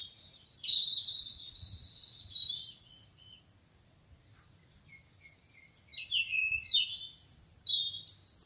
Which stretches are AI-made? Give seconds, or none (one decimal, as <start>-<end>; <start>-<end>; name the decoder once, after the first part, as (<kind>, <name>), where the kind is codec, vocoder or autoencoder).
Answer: 0.0-3.4 (vocoder, Vocos)